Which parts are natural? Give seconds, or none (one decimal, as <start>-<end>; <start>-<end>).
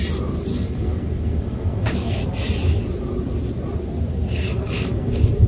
0.0-0.5; 2.2-4.1